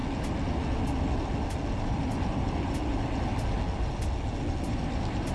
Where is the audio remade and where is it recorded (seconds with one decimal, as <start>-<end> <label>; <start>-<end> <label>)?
0.0-1.8 recorded; 1.8-3.3 remade; 3.3-4.6 recorded; 4.6-5.3 remade